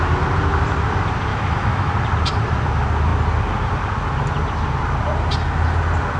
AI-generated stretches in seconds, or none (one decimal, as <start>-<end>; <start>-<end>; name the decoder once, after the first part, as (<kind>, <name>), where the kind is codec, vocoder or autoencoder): 1.3-1.9 (autoencoder, DAC-VAE)